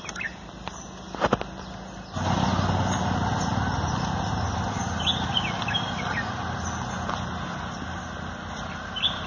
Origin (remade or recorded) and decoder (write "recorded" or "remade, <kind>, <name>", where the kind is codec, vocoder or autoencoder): recorded